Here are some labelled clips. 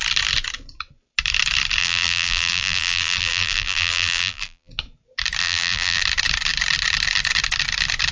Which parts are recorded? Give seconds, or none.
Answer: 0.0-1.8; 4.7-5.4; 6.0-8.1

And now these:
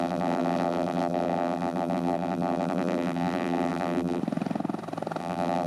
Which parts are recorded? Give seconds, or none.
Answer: 4.2-5.2

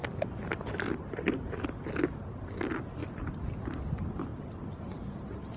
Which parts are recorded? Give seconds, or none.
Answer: 0.0-5.6

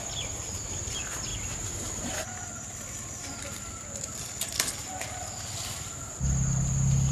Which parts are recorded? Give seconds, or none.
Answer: 0.0-1.3; 2.1-7.1

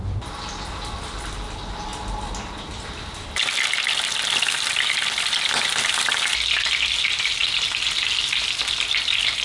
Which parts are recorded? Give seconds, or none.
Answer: 1.9-4.4; 7.4-8.2

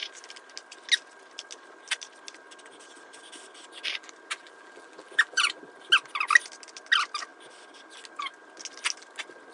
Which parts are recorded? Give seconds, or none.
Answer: 0.0-4.4; 5.6-9.5